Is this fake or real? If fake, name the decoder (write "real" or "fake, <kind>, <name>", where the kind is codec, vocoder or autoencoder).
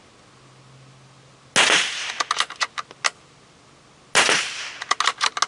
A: real